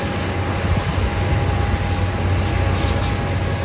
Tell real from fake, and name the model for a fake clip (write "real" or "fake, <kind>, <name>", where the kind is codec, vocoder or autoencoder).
real